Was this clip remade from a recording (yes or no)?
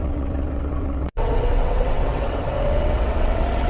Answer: yes